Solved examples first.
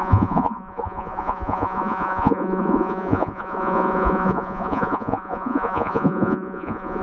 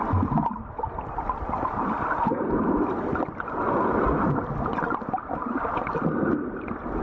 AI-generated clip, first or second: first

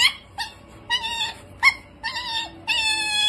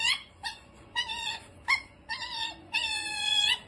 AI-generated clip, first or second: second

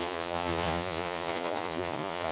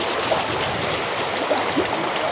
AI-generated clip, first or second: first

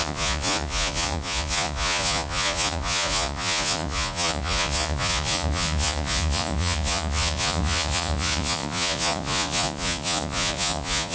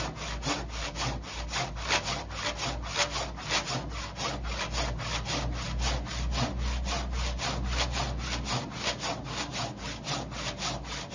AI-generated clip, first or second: first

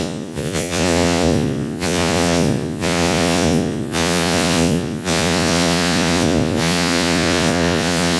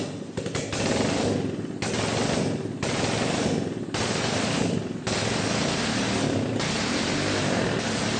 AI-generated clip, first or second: first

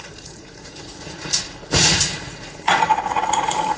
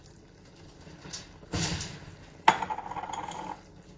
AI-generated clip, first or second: first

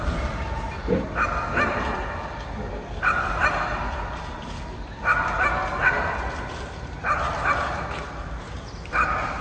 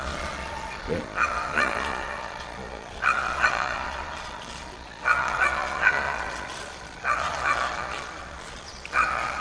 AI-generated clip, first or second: second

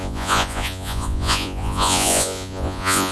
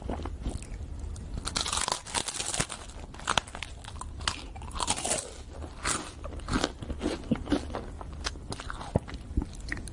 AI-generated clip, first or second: first